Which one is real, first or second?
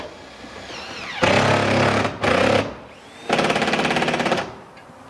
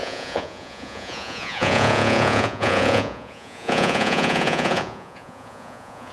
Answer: first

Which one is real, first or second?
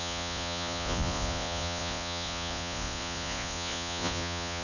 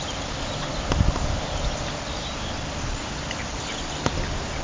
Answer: second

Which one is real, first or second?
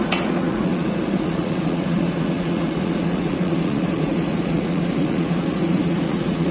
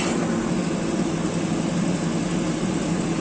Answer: second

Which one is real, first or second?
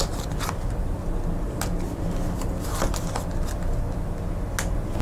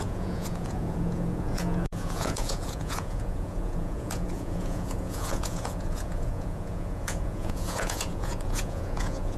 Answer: first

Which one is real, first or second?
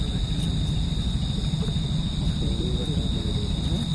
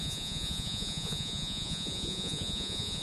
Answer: first